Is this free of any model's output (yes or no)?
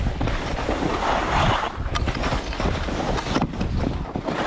yes